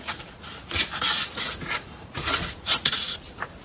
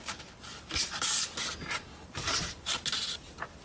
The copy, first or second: first